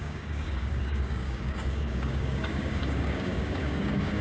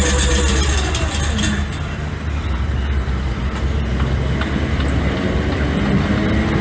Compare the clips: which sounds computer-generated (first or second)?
first